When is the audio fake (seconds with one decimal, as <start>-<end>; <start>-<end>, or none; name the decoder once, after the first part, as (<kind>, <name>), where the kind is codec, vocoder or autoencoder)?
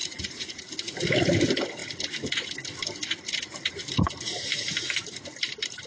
0.0-0.6 (vocoder, Vocos)